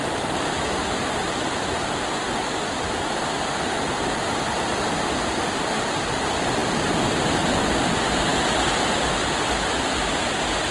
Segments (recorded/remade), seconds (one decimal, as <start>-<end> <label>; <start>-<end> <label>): 0.0-10.7 recorded